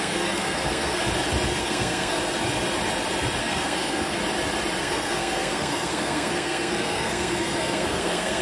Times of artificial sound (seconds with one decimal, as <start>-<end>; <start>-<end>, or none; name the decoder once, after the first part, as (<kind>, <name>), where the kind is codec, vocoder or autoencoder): 0.0-1.0 (codec, SNAC); 1.6-2.2; 3.4-4.2; 4.8-8.4